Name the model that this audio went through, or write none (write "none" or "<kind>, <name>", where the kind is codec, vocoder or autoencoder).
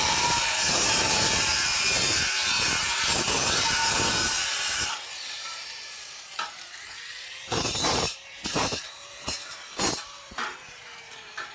vocoder, BigVGAN v2